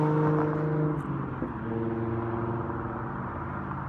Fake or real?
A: real